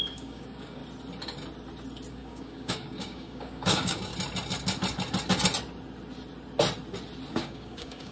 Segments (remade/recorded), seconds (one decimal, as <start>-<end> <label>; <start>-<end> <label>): 0.0-0.8 remade; 0.8-2.1 recorded; 2.1-4.1 remade; 4.1-7.3 recorded; 7.3-8.1 remade